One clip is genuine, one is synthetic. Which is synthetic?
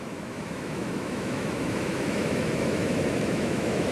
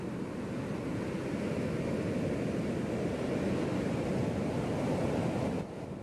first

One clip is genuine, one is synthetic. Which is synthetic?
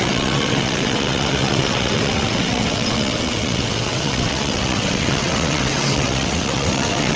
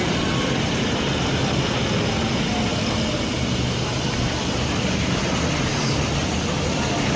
first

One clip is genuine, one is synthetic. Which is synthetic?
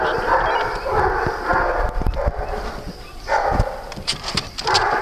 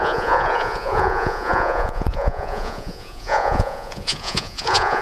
second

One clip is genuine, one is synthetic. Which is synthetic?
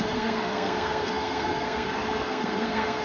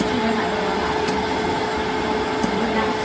first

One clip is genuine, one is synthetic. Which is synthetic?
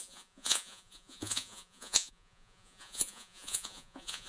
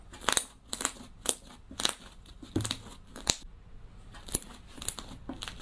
first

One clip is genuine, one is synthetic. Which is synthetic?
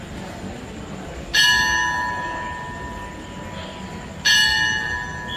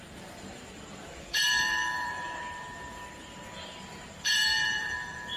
second